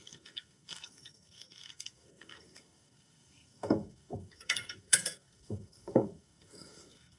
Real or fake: fake